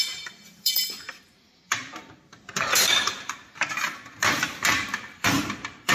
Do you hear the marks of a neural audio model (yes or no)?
yes